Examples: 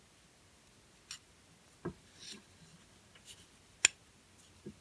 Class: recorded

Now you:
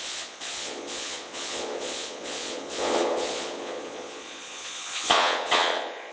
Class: remade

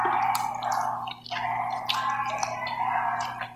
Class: recorded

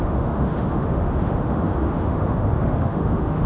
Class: remade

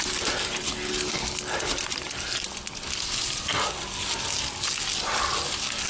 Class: recorded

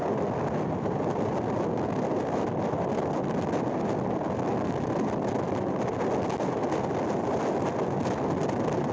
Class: recorded